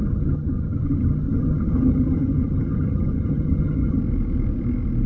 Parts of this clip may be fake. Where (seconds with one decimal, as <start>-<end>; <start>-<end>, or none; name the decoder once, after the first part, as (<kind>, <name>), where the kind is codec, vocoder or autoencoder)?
0.0-4.0 (vocoder, HiFi-GAN)